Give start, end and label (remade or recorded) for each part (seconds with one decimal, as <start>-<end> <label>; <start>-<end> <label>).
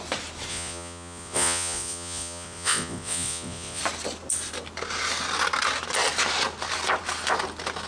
0.0-0.5 recorded; 0.5-3.8 remade; 3.8-7.9 recorded